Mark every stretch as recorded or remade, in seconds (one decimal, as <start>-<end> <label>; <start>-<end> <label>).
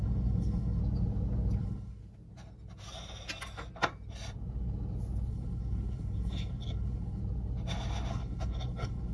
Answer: 0.0-0.8 remade; 0.8-1.6 recorded; 1.6-2.0 remade; 2.0-5.3 recorded; 5.3-7.2 remade; 7.2-8.1 recorded; 8.1-9.1 remade